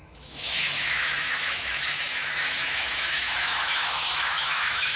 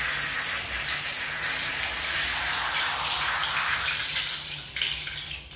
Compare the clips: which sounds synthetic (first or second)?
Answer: first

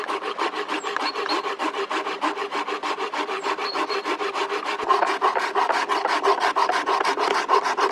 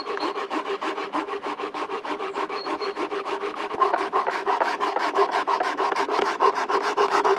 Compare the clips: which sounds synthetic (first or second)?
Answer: second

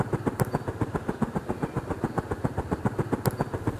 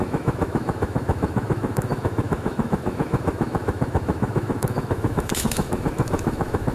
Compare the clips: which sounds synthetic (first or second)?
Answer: second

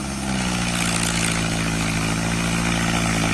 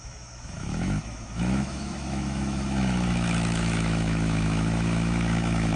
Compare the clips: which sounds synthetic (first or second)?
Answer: second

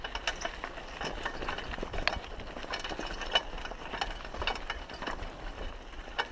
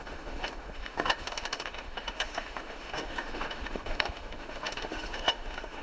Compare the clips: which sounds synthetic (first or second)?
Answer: second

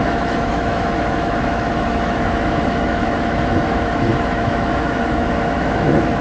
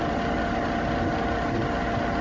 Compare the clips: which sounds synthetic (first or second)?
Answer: first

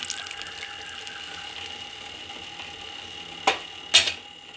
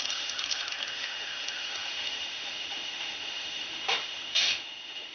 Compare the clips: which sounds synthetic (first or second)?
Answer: second